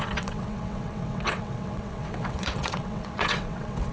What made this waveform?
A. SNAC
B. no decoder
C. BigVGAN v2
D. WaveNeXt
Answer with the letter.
D